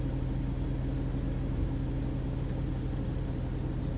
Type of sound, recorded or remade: recorded